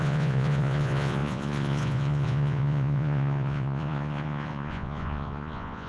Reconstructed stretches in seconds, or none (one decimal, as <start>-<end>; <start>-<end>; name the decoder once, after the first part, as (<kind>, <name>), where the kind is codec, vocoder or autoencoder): 0.0-5.9 (vocoder, Vocos)